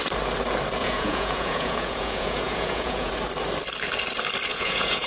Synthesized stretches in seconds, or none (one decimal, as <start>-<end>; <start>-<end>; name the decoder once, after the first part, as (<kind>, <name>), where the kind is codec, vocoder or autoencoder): 0.8-3.1 (vocoder, Vocos); 4.5-5.1